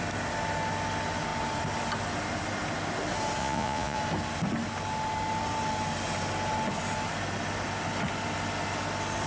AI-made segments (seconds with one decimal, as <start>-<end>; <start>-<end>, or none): 3.4-4.0